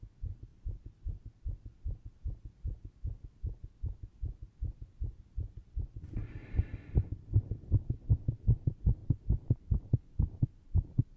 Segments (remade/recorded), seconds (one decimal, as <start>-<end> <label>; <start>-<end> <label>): 0.0-11.2 recorded

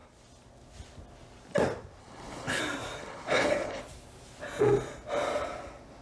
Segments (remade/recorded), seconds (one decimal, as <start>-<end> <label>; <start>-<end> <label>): 0.0-2.0 recorded; 2.0-2.6 remade; 2.6-3.0 recorded; 3.0-3.8 remade; 3.8-6.0 recorded

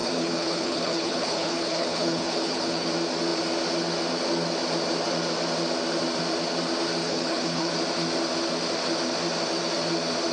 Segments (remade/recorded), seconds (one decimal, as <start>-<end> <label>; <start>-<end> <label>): 0.0-2.9 remade; 2.9-7.0 recorded; 7.0-7.7 remade; 7.7-10.3 recorded

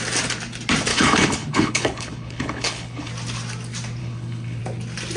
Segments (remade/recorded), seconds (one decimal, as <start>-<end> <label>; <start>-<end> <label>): 0.0-0.9 recorded; 0.9-3.1 remade; 3.1-4.0 recorded; 4.0-4.6 remade; 4.6-5.2 recorded

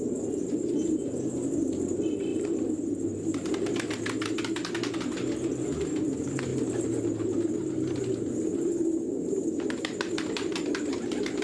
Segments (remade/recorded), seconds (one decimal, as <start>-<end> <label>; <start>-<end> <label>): 0.0-11.4 recorded